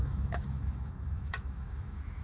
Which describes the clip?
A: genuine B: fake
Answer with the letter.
B